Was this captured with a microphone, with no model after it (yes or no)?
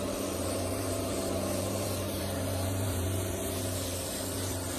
no